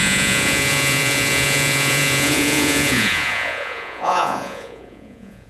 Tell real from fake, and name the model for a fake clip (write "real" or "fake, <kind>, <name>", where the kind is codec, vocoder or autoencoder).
fake, vocoder, Vocos